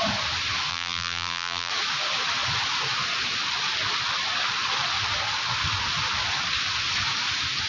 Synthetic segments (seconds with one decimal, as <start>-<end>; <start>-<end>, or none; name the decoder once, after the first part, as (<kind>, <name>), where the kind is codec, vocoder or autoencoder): 0.7-1.7 (vocoder, BigVGAN v2)